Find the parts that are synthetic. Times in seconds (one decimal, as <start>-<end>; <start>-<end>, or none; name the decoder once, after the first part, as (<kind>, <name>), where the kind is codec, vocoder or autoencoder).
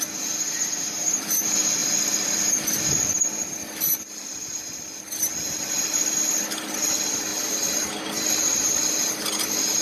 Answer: none